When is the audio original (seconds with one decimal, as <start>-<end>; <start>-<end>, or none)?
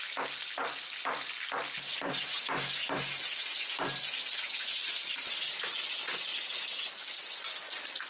0.0-8.1